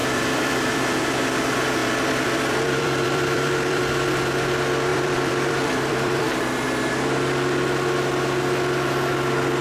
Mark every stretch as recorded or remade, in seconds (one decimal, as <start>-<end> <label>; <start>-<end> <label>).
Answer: 0.0-1.0 remade; 1.0-1.8 recorded; 1.8-3.8 remade; 3.8-4.9 recorded; 4.9-6.4 remade; 6.4-9.6 recorded